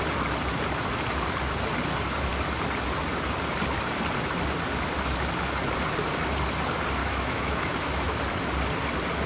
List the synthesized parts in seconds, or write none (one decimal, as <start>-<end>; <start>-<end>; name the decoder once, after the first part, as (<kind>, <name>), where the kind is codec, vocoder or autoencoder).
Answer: 7.0-8.2 (autoencoder, DAC-VAE)